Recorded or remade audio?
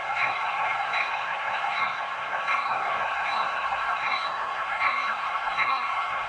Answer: remade